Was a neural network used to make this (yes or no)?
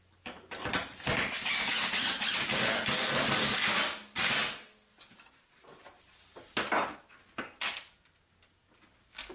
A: no